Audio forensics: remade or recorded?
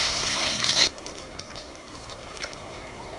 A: remade